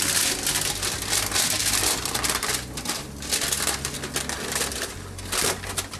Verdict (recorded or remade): recorded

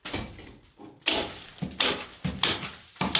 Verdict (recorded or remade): recorded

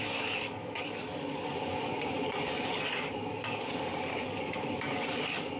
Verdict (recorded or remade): remade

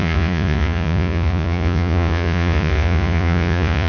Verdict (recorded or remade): remade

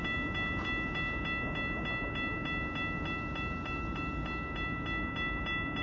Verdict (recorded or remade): recorded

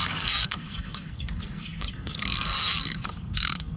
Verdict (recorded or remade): remade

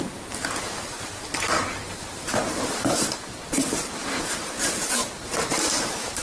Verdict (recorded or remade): remade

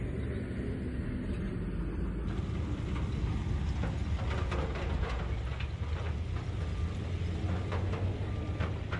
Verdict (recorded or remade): recorded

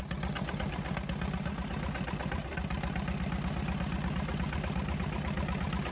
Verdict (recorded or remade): recorded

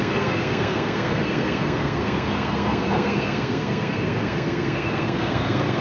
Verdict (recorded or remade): remade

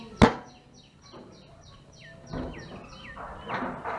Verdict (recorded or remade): recorded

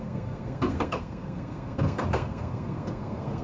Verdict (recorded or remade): remade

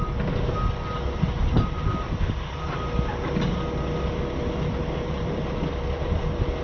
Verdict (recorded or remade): recorded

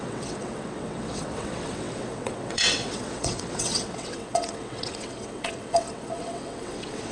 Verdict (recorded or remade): remade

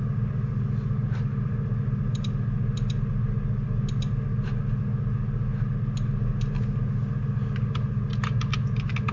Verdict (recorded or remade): recorded